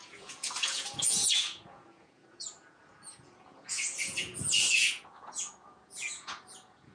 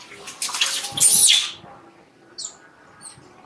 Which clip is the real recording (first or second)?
second